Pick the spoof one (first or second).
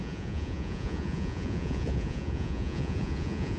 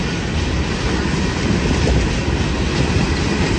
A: first